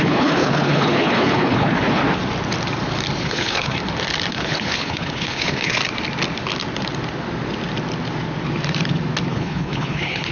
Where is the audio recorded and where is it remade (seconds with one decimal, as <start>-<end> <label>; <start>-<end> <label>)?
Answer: 0.0-2.0 remade; 2.0-3.2 recorded; 3.2-3.8 remade; 3.8-4.3 recorded; 4.3-5.8 remade; 5.8-9.3 recorded; 9.3-10.3 remade